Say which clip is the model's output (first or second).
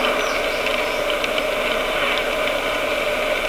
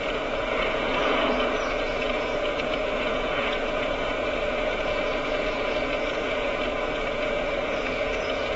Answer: second